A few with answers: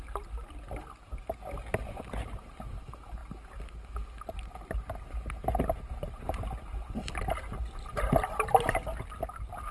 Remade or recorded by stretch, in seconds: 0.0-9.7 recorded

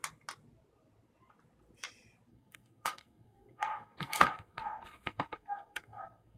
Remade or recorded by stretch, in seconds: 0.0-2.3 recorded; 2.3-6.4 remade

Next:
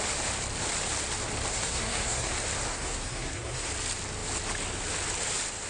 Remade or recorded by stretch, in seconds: 0.0-1.5 recorded; 1.5-2.3 remade; 2.3-2.7 recorded; 2.7-3.7 remade; 3.7-5.7 recorded